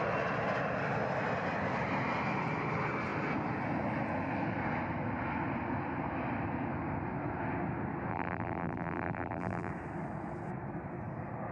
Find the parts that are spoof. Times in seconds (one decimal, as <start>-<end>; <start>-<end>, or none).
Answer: 8.1-9.7